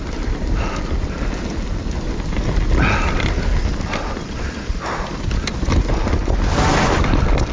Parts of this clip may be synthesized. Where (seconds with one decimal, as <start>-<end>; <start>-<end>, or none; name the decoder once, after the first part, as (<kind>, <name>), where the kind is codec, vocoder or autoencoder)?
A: none